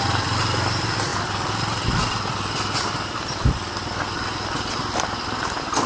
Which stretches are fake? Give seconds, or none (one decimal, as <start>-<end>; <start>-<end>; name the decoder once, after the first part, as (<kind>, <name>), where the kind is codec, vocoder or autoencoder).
none